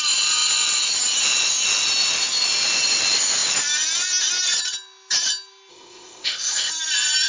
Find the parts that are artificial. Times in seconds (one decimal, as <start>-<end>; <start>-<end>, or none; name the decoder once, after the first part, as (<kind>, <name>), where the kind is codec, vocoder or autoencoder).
5.7-6.7 (codec, ZipCodec)